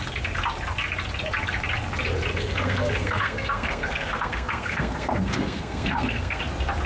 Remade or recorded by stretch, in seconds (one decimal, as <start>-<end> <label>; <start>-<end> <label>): 0.0-2.3 recorded; 2.3-6.4 remade; 6.4-6.9 recorded